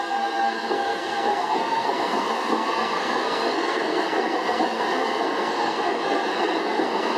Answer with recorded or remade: remade